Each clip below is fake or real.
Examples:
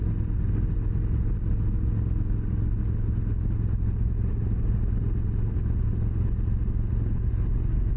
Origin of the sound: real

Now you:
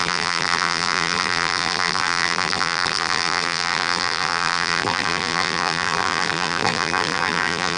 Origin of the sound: fake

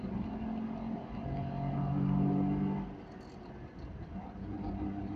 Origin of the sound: real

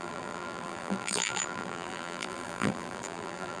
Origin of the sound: fake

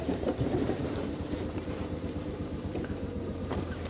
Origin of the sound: fake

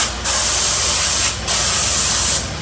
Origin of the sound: real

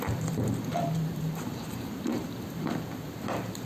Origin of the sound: fake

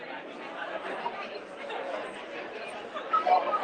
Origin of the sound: fake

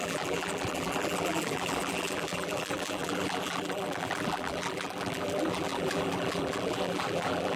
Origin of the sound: fake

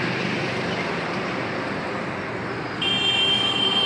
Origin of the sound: fake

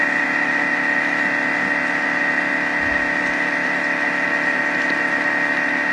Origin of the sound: real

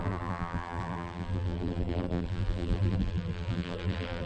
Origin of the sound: fake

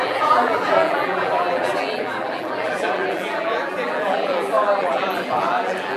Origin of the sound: fake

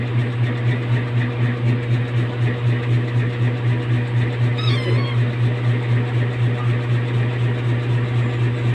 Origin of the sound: real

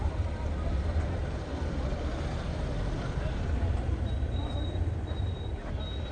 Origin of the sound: real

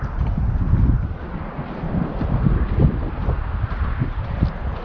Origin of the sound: real